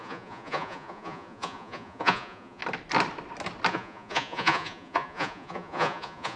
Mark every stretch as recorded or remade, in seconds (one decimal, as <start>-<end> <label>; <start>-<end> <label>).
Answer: 0.0-2.6 remade; 2.6-3.7 recorded; 3.7-6.4 remade